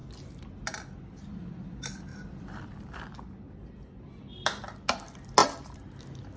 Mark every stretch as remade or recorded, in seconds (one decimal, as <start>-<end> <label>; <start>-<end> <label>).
0.0-2.1 recorded; 2.1-3.0 remade; 3.0-5.4 recorded; 5.4-6.0 remade; 6.0-6.4 recorded